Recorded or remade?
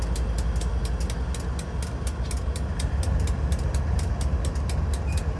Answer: recorded